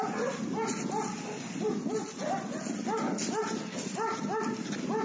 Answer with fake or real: real